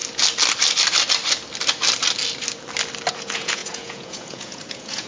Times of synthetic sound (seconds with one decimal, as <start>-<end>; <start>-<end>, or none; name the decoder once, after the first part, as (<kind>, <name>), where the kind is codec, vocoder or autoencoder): 3.1-5.1 (vocoder, Vocos)